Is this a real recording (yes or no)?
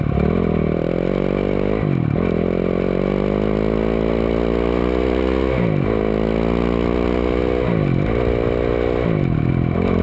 yes